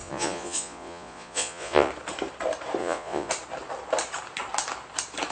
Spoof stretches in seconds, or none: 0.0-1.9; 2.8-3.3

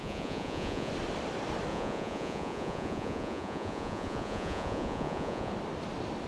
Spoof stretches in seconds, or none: 0.0-0.9; 1.7-5.5

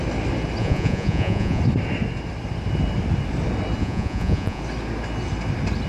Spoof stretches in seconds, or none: 0.6-1.6; 3.8-4.6

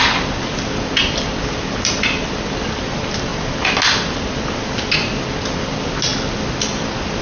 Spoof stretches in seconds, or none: none

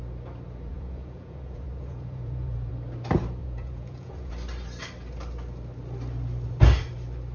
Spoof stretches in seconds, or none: 0.7-2.7; 3.4-4.3

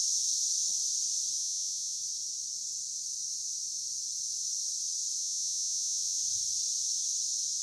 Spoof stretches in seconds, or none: 1.4-2.0; 5.2-6.2